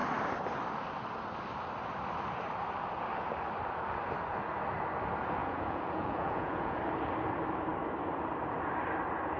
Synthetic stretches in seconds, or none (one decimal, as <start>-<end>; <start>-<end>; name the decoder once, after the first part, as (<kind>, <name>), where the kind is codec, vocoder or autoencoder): 5.4-6.8 (vocoder, Vocos)